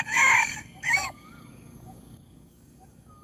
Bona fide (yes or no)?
no